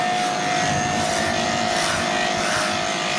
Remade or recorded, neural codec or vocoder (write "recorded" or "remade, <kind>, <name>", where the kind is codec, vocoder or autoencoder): recorded